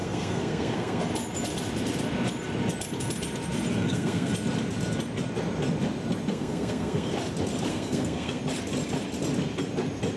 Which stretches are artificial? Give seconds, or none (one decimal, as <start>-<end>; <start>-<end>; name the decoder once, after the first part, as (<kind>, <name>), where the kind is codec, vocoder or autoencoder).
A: 0.0-1.0 (codec, SNAC); 3.7-4.3; 6.3-7.1; 7.7-8.4